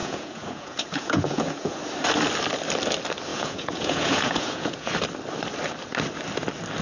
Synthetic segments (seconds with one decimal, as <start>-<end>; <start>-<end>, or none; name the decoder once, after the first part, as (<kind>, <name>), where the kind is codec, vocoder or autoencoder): 0.0-1.8 (vocoder, Vocos); 3.3-4.9